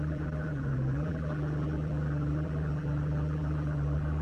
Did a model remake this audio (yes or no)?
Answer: yes